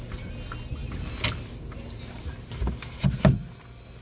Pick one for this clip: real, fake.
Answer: real